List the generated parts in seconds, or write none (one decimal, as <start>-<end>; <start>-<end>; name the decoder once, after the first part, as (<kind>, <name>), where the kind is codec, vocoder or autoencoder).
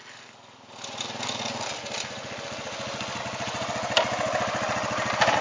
none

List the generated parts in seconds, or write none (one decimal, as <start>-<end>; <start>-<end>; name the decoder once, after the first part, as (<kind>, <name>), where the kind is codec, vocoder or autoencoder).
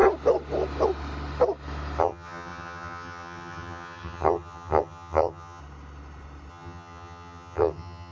2.0-5.6 (vocoder, HiFi-GAN); 6.5-8.1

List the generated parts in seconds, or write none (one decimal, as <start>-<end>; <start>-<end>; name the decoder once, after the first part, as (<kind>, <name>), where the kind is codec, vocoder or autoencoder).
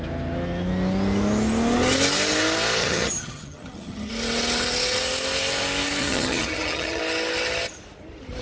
2.8-4.1 (vocoder, HiFi-GAN); 6.0-7.0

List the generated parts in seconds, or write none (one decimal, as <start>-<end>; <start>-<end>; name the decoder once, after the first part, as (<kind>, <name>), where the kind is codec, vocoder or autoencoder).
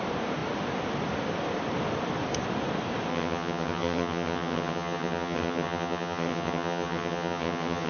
3.1-7.9 (vocoder, HiFi-GAN)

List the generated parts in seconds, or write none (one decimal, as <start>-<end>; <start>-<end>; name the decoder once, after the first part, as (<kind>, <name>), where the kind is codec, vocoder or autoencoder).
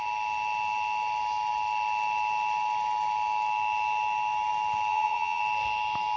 4.9-5.4 (vocoder, HiFi-GAN)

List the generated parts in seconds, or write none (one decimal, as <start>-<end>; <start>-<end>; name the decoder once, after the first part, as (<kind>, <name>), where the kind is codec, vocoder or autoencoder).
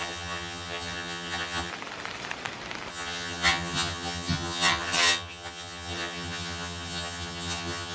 0.0-1.7 (vocoder, HiFi-GAN); 2.9-7.9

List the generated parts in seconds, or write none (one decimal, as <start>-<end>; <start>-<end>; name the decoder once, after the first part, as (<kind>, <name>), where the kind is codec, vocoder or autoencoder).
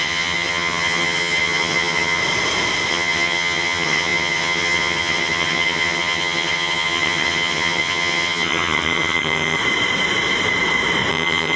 0.0-2.2 (vocoder, HiFi-GAN); 2.9-9.6; 11.1-11.6